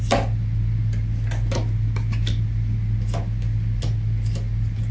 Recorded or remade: recorded